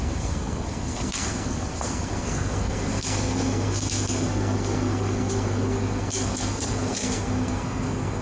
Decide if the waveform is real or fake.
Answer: fake